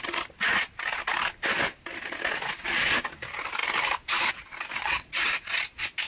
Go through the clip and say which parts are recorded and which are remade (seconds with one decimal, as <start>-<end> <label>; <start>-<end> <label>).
0.0-4.8 recorded; 4.8-5.6 remade; 5.6-6.1 recorded